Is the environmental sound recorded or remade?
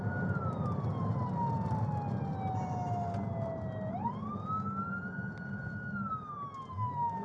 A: recorded